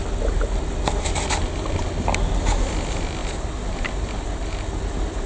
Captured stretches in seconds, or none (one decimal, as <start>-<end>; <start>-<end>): 0.0-5.3